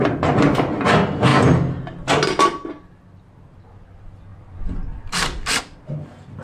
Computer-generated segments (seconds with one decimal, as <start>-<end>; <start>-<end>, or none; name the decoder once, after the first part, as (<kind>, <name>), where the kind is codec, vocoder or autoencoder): 4.3-5.6 (vocoder, BigVGAN v2)